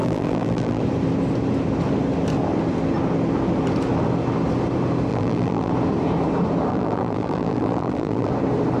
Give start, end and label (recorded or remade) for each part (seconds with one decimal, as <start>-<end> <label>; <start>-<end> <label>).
0.0-0.8 remade; 0.8-5.1 recorded; 5.1-5.7 remade; 5.7-6.7 recorded; 6.7-8.3 remade; 8.3-8.8 recorded